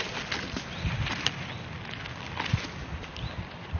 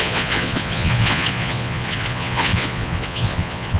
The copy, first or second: second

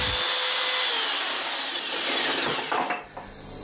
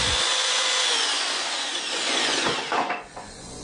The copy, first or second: second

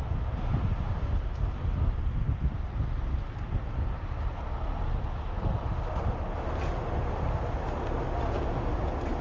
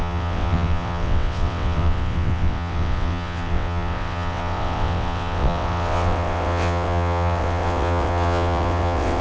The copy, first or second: second